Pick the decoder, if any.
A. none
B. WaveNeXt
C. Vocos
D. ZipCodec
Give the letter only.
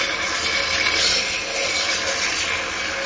A